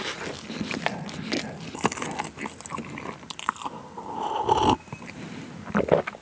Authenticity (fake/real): real